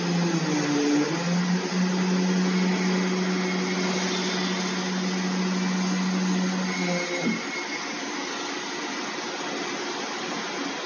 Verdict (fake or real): real